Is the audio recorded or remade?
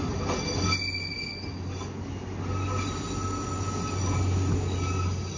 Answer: recorded